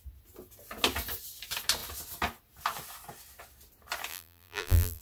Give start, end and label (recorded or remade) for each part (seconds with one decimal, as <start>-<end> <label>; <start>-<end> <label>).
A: 0.0-4.1 recorded; 4.1-5.0 remade